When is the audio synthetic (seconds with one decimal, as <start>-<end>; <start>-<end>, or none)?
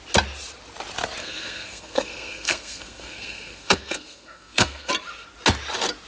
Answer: 1.2-4.9